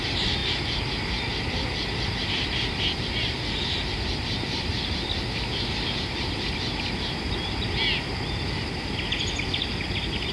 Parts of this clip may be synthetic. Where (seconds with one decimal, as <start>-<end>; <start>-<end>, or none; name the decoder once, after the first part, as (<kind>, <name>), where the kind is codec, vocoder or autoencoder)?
0.0-0.4 (vocoder, BigVGAN v2); 2.1-10.3